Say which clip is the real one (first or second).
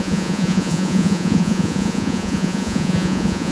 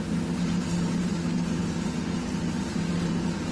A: second